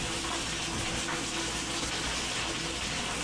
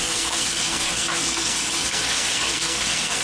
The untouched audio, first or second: first